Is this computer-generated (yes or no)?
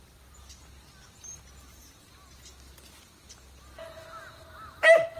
no